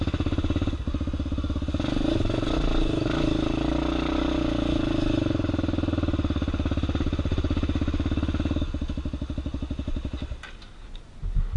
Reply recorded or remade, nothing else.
recorded